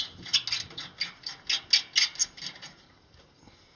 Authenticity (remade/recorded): recorded